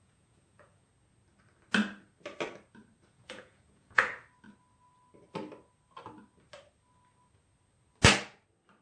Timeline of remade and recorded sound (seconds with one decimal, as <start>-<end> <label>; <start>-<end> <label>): 0.0-0.9 remade; 0.9-3.1 recorded; 3.1-4.1 remade; 4.1-8.8 recorded